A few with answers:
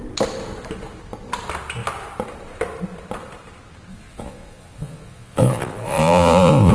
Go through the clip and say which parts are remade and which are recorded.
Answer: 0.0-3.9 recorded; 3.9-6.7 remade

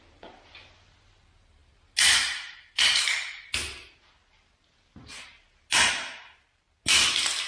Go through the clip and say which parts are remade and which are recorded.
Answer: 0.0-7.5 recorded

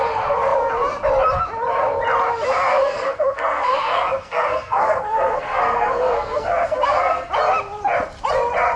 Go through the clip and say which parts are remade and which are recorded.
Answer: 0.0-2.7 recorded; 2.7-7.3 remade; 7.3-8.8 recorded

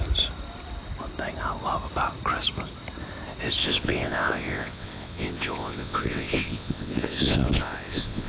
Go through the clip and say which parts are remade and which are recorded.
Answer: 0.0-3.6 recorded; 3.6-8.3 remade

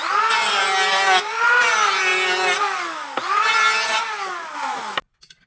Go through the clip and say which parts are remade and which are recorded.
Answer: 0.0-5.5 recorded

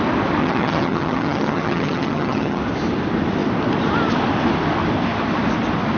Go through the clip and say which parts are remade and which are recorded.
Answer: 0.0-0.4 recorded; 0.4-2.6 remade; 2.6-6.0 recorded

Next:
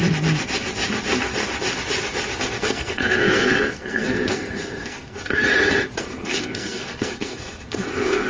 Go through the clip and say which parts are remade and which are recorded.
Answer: 0.0-2.4 recorded; 2.4-5.4 remade; 5.4-6.0 recorded; 6.0-8.3 remade